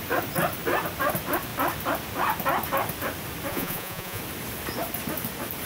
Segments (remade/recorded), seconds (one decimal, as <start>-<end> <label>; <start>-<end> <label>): 0.0-3.5 recorded; 3.5-4.2 remade; 4.2-5.7 recorded